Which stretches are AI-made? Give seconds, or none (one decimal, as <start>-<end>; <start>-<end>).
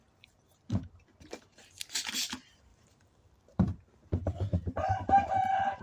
0.0-1.3; 2.7-5.8